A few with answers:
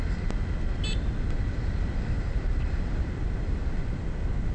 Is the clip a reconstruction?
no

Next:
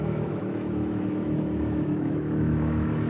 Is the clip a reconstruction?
yes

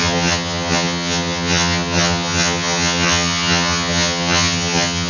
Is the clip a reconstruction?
yes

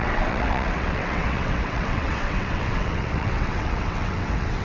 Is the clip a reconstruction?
yes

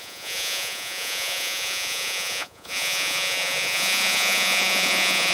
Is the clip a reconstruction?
yes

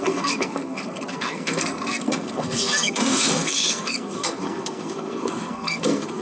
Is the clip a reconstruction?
yes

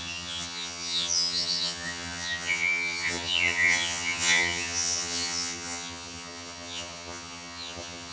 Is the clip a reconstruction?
yes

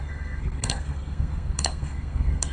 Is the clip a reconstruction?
yes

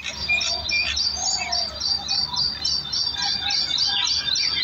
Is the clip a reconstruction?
no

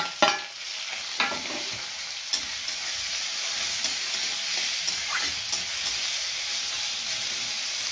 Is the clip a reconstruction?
no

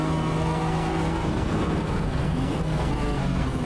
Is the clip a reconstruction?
yes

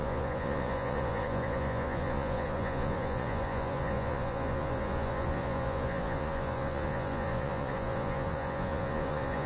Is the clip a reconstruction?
yes